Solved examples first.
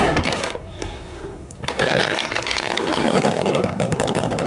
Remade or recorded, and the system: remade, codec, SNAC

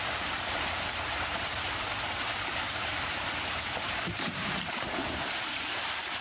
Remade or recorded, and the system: remade, vocoder, BigVGAN v2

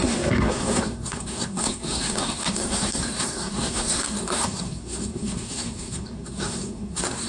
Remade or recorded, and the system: remade, codec, SNAC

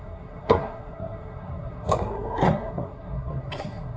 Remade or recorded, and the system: remade, codec, SNAC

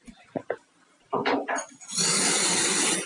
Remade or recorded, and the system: recorded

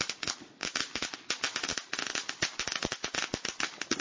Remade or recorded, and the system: recorded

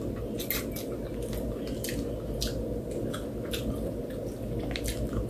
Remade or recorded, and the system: recorded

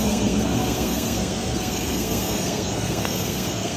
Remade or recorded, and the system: remade, codec, SNAC